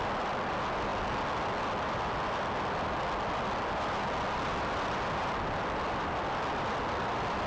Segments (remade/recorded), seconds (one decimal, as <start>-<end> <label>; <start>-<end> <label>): 0.0-7.5 recorded